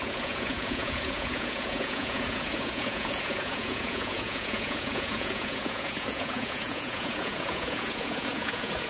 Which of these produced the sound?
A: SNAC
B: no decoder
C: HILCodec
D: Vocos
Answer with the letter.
D